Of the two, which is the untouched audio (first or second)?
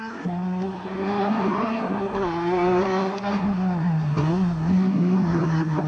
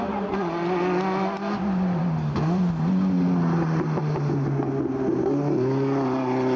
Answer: second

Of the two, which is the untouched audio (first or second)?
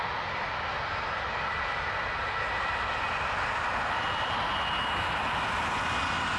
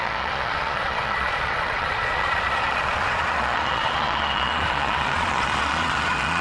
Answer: first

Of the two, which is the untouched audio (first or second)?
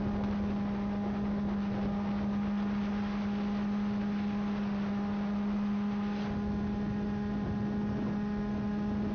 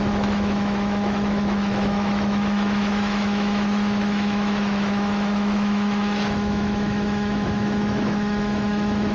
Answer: first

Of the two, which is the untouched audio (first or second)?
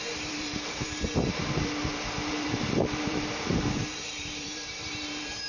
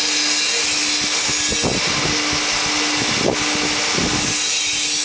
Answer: second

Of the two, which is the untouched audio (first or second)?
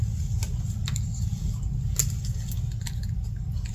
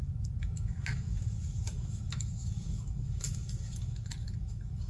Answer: first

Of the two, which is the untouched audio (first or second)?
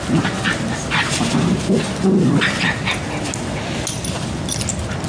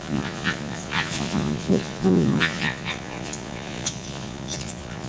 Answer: first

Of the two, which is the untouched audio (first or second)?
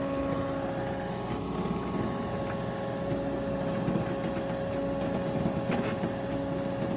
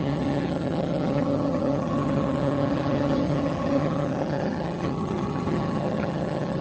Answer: first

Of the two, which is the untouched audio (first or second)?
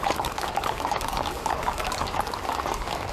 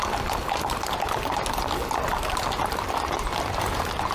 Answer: second